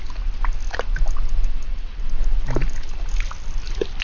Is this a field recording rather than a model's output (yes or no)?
yes